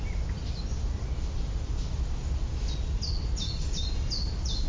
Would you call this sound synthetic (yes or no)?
no